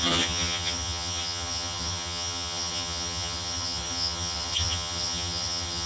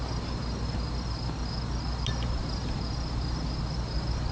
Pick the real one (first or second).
second